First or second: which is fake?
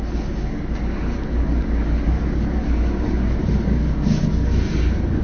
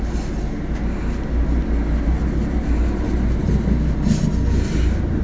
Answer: first